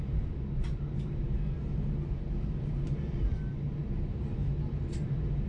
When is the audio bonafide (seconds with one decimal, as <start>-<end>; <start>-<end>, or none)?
0.0-5.5